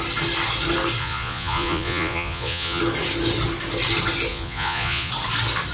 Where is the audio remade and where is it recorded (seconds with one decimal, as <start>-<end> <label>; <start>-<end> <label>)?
0.0-1.0 recorded; 1.0-2.8 remade; 2.8-4.3 recorded; 4.3-5.1 remade; 5.1-5.7 recorded